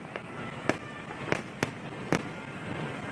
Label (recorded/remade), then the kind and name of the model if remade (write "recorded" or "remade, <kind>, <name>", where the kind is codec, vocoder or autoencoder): recorded